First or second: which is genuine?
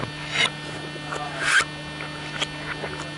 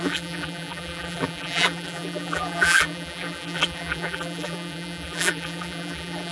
first